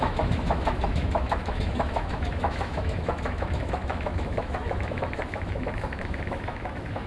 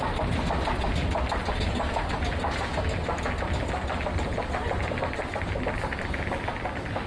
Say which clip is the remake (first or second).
first